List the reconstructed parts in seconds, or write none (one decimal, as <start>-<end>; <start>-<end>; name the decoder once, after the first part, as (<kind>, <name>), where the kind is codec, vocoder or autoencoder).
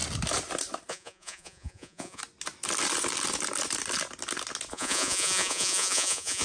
0.9-2.2 (vocoder, Vocos); 4.7-6.4